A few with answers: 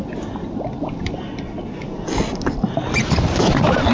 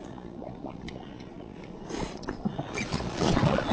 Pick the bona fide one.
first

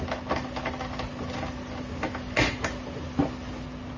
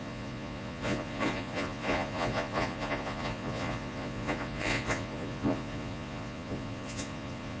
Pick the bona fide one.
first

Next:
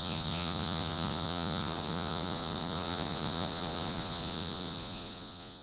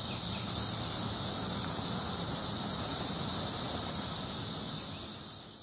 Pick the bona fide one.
second